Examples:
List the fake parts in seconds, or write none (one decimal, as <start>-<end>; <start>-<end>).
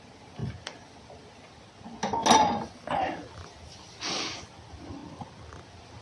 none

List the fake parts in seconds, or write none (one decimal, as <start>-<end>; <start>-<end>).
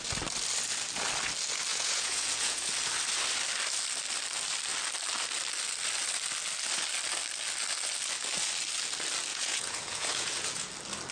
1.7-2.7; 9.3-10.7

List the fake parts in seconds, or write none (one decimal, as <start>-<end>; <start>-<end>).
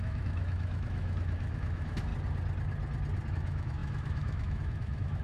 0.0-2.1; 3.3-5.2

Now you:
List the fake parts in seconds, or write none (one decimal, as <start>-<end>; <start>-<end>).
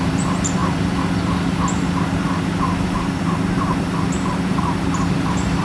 0.0-5.6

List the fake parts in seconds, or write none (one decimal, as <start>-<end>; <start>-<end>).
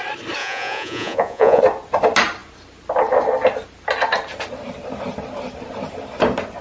0.4-1.6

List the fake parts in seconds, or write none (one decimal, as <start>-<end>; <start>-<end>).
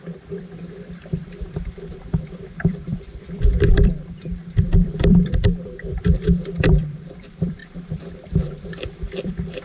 0.0-9.6